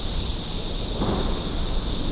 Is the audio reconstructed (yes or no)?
no